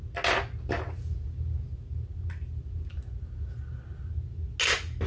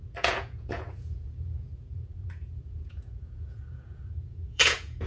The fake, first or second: second